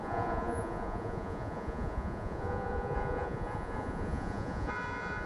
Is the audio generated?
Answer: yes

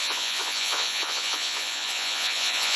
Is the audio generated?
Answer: yes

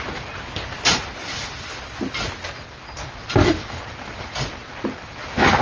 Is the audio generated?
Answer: no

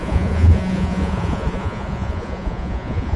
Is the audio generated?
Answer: yes